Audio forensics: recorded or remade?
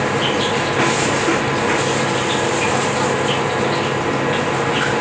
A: recorded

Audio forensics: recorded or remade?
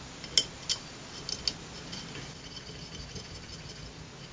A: recorded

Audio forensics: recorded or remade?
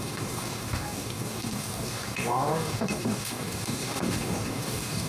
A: remade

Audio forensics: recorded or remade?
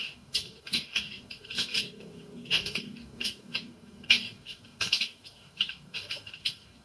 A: remade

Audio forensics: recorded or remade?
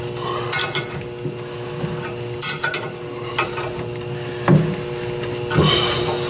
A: recorded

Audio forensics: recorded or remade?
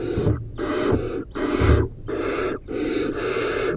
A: recorded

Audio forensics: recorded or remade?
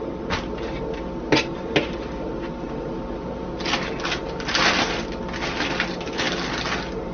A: recorded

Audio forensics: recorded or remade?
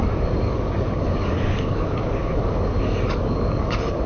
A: remade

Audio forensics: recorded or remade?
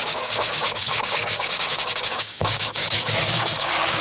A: remade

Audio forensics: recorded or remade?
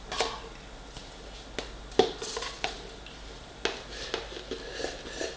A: recorded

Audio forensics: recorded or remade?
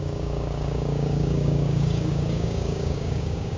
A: remade